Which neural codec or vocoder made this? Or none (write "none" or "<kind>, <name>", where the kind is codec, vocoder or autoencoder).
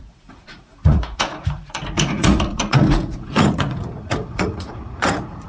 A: vocoder, Vocos